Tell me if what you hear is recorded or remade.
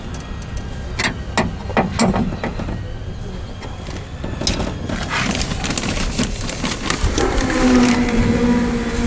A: recorded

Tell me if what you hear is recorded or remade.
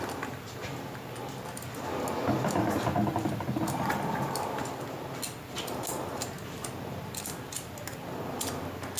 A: recorded